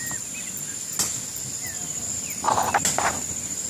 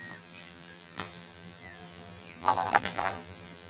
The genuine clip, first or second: first